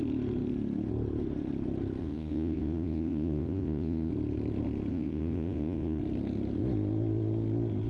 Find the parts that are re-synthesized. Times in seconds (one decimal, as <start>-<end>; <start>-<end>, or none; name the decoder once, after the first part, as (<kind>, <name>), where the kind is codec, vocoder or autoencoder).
2.0-4.1 (vocoder, Vocos); 4.9-6.0